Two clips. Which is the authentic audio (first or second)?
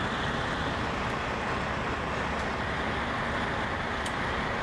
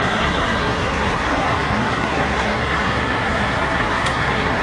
first